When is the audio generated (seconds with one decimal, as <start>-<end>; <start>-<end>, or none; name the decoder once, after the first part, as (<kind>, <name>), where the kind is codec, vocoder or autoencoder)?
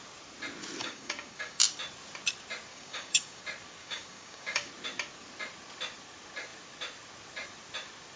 0.8-1.6 (codec, DAC); 2.7-3.4; 3.8-4.7